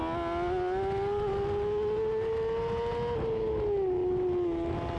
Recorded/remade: recorded